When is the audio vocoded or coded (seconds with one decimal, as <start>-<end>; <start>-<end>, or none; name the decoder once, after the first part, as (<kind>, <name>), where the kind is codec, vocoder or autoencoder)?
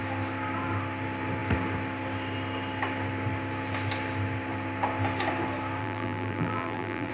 5.8-7.1 (vocoder, BigVGAN v2)